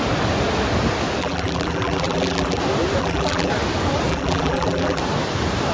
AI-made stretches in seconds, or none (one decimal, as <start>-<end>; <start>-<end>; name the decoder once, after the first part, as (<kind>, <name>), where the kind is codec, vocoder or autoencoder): 1.2-2.6 (vocoder, BigVGAN v2); 3.0-3.5; 4.1-5.0